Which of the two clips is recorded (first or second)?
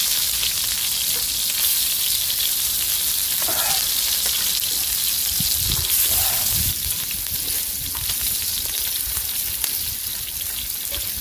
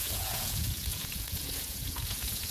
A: first